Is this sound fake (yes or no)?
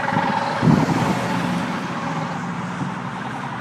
no